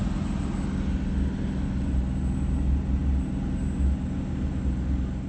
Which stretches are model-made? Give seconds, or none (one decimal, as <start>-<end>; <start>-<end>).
none